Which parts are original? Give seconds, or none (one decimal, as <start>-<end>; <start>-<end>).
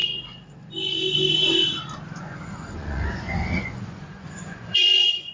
0.0-2.2